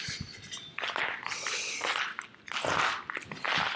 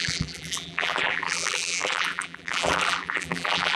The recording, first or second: first